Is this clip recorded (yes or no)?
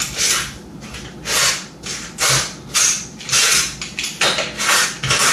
yes